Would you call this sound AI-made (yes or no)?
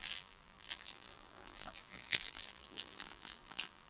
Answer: yes